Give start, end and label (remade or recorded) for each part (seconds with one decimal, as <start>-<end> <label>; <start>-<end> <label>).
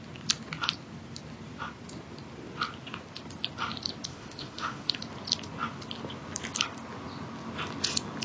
0.0-4.1 recorded; 4.1-5.0 remade; 5.0-8.2 recorded